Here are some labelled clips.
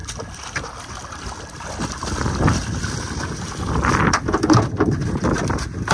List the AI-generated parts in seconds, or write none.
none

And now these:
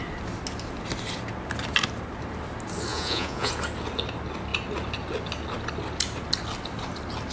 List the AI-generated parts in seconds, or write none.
2.9-3.5 (vocoder, Vocos)

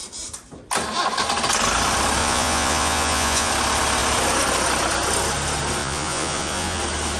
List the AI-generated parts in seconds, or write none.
2.2-3.5 (vocoder, Vocos); 5.8-6.8

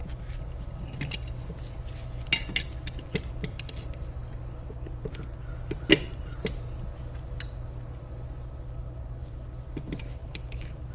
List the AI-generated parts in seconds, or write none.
none